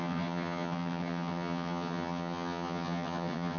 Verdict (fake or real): fake